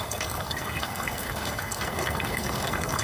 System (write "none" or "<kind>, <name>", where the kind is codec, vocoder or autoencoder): codec, SNAC